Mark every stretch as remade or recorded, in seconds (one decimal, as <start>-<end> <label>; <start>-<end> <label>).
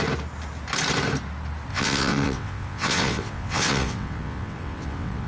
0.0-1.7 recorded; 1.7-5.3 remade